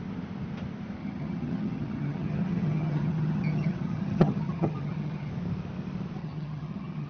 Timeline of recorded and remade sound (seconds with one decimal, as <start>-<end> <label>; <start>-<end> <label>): 0.0-1.0 recorded; 1.0-5.3 remade; 5.3-6.2 recorded; 6.2-7.1 remade